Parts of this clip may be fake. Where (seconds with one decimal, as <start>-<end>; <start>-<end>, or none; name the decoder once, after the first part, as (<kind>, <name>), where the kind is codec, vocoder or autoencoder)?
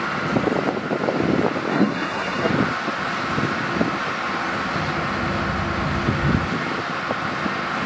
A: 1.7-2.5 (codec, SNAC)